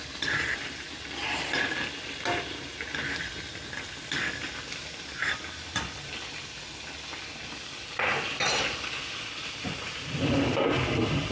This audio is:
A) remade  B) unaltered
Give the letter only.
B